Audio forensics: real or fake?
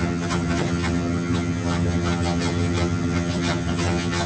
fake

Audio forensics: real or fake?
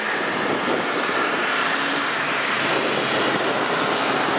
real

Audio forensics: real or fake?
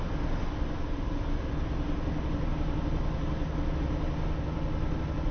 real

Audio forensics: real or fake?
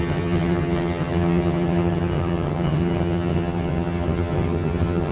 fake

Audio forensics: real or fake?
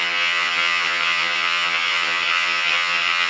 fake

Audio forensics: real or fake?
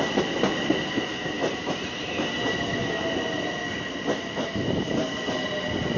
real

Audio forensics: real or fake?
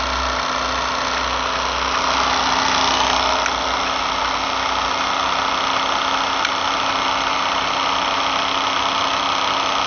real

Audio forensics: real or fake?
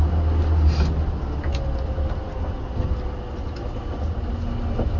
real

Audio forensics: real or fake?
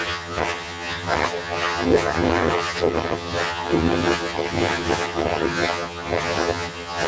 fake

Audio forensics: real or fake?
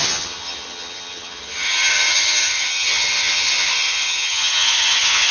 fake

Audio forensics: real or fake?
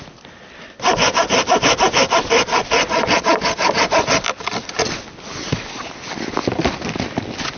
real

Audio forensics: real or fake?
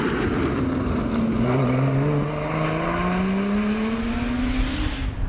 real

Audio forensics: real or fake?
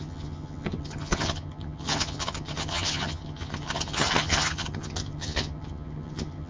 fake